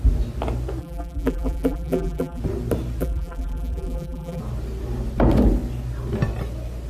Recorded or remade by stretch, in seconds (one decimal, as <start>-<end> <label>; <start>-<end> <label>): 0.0-0.8 recorded; 0.8-2.4 remade; 2.4-3.0 recorded; 3.0-4.4 remade; 4.4-6.9 recorded